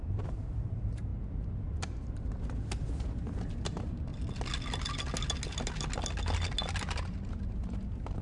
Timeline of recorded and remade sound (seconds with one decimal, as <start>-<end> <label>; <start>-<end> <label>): 0.0-4.1 remade; 4.1-6.8 recorded; 6.8-8.2 remade